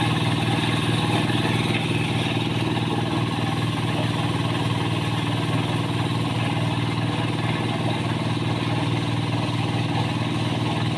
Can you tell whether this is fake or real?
real